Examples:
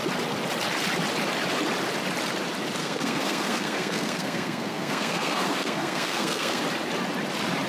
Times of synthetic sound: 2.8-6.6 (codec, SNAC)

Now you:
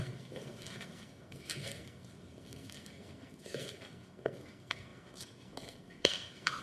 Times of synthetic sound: 0.0-6.6 (codec, SNAC)

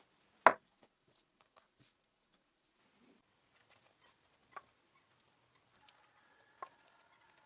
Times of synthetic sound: 0.5-2.8 (vocoder, Vocos)